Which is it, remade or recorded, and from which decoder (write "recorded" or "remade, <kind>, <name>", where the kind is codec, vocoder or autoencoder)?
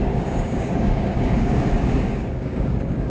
remade, codec, DAC